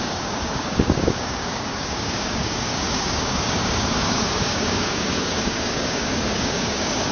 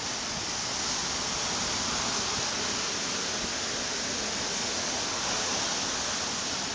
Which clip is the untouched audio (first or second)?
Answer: second